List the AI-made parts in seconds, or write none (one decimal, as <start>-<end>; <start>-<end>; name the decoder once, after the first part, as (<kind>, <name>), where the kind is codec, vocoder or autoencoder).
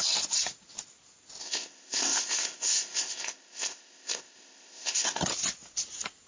1.4-5.2 (codec, ZipCodec)